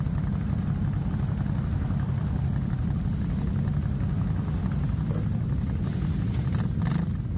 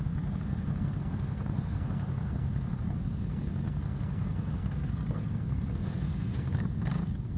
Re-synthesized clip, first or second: second